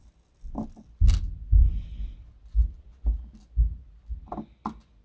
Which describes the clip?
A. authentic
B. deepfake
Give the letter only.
A